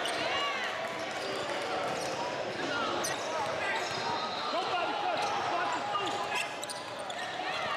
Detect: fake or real real